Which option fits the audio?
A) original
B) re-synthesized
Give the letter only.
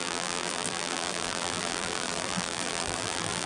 B